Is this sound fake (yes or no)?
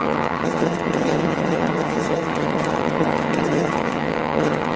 yes